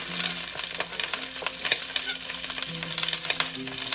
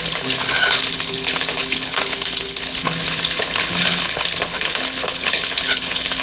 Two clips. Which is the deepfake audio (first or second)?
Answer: second